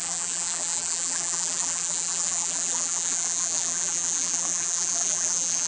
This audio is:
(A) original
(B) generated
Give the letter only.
B